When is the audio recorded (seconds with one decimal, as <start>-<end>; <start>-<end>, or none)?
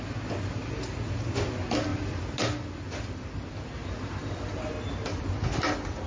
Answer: 0.0-6.1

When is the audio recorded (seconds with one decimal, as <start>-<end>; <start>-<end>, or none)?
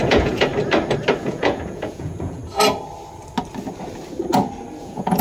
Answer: 0.5-1.2; 2.4-4.8